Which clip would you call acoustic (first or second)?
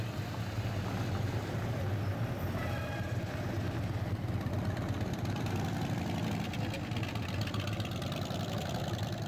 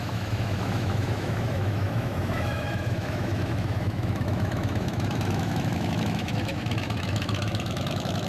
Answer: first